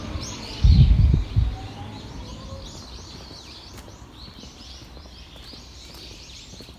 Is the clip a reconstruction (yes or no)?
no